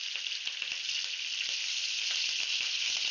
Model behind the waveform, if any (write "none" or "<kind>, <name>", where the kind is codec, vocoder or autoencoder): none